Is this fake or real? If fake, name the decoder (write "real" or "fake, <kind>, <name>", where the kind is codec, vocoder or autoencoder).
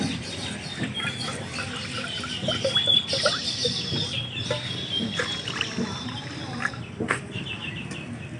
real